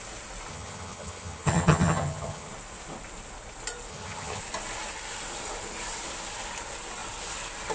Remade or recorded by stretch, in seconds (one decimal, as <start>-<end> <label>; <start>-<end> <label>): 0.0-0.5 recorded; 0.5-2.5 remade; 2.5-3.9 recorded; 3.9-4.4 remade; 4.4-7.7 recorded